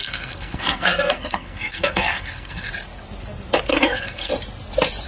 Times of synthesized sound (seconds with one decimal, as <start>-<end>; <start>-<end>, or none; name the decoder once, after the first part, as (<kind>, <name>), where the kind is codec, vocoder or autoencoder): 0.0-2.7 (codec, SNAC); 3.7-4.3